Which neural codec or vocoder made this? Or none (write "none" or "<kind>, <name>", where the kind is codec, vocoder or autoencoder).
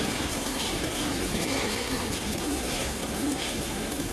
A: codec, SNAC